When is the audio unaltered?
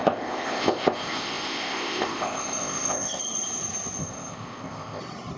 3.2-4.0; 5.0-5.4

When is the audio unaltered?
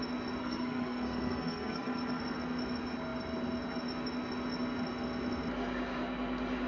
0.0-0.4; 2.2-6.7